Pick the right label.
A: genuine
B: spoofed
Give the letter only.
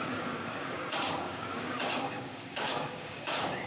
B